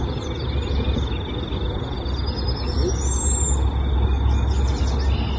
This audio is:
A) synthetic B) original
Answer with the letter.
B